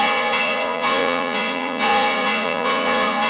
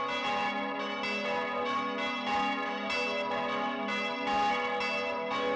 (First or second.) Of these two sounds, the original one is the second